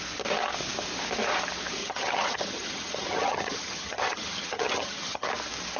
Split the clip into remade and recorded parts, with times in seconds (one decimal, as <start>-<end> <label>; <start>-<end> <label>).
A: 0.0-1.8 recorded; 1.8-5.3 remade; 5.3-5.8 recorded